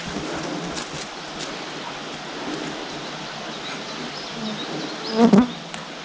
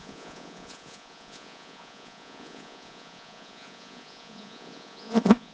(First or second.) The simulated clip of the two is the second